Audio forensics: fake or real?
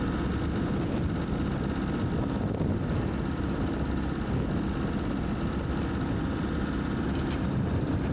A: real